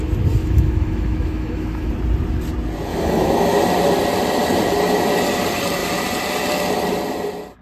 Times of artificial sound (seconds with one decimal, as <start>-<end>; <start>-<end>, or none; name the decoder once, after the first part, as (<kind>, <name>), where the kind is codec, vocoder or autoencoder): 0.4-1.9 (autoencoder, DAC-VAE); 2.9-3.5